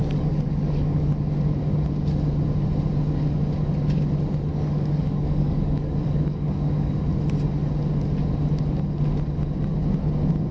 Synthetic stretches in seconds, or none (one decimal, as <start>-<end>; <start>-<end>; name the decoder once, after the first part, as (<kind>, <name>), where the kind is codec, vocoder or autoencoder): 0.0-1.1 (codec, DAC); 4.5-6.9